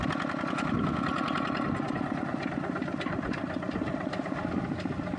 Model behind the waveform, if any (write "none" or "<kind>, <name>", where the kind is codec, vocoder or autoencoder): none